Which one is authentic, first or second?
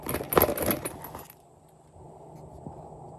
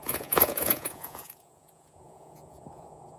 first